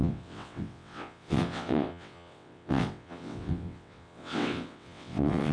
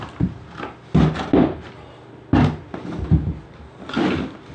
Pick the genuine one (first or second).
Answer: second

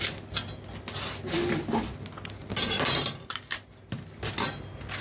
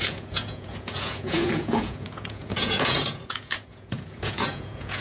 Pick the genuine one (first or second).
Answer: first